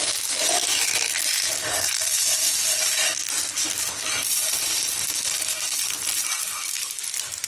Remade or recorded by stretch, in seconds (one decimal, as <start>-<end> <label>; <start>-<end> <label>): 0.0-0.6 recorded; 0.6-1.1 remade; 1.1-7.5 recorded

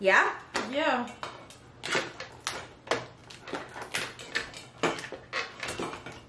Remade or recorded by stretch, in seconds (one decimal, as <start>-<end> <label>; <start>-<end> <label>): 0.0-6.3 recorded

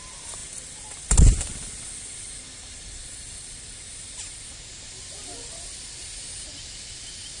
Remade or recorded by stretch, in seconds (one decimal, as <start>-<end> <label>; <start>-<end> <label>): 0.0-7.4 recorded

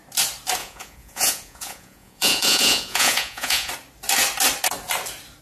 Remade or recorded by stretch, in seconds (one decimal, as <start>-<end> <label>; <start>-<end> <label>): 0.0-0.6 recorded; 0.6-3.7 remade; 3.7-5.4 recorded

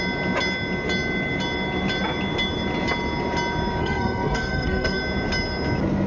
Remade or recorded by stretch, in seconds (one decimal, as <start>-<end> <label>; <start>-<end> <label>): 0.0-3.8 recorded; 3.8-5.0 remade; 5.0-6.1 recorded

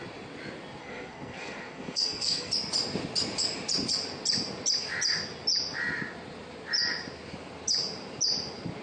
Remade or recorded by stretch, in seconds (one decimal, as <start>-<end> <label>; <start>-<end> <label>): 0.0-0.8 recorded; 0.8-2.5 remade; 2.5-8.8 recorded

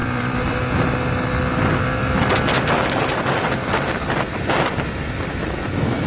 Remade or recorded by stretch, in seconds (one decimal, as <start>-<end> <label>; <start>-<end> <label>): 0.0-0.6 remade; 0.6-2.0 recorded; 2.0-6.1 remade

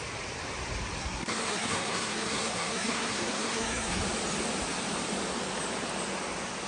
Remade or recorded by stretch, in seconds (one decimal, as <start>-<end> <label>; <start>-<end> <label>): 0.0-1.0 recorded; 1.0-4.0 remade; 4.0-6.7 recorded